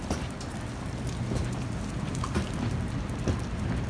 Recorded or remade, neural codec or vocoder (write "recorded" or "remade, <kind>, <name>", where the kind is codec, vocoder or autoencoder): recorded